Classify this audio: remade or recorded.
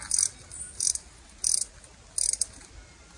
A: recorded